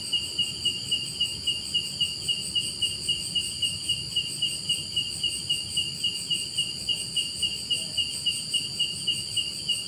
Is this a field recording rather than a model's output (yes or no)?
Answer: yes